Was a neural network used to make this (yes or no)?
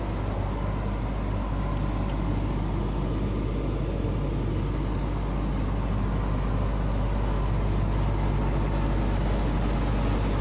no